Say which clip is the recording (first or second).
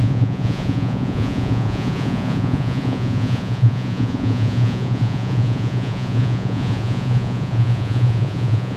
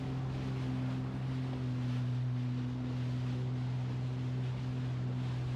second